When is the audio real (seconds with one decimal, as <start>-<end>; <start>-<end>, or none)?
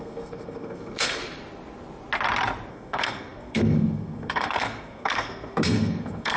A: 1.2-2.7